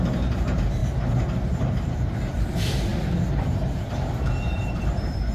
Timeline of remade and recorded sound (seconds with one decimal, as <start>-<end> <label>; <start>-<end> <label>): 0.0-0.8 remade; 0.8-1.6 recorded; 1.6-2.9 remade; 2.9-3.4 recorded; 3.4-5.3 remade